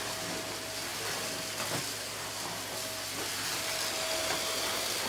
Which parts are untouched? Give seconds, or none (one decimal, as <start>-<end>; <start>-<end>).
0.0-5.1